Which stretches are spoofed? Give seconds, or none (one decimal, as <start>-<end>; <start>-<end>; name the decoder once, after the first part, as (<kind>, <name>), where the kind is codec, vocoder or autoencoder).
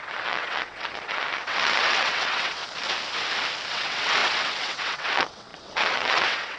0.0-2.6 (vocoder, WaveNeXt); 3.7-6.6